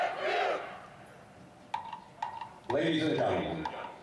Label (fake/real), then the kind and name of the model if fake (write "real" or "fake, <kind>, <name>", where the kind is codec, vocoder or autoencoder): real